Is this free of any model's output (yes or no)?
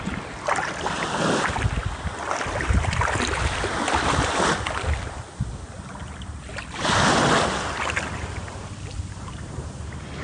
yes